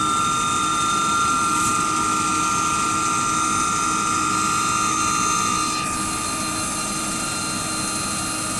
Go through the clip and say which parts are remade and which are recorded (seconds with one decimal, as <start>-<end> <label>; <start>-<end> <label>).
0.0-0.7 recorded; 0.7-1.8 remade; 1.8-6.8 recorded; 6.8-7.4 remade; 7.4-8.6 recorded